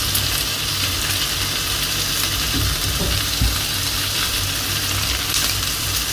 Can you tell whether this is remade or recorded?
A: remade